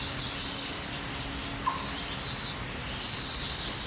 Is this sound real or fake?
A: real